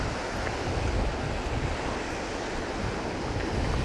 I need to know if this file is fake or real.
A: real